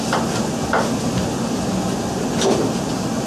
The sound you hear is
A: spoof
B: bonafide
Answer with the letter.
B